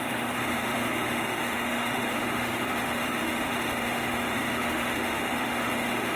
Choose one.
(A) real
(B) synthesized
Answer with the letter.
B